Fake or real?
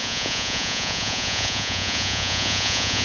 fake